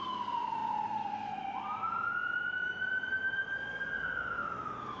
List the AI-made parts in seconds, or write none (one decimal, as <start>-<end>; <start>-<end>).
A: none